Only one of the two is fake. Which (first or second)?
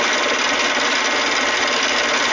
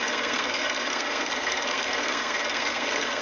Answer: second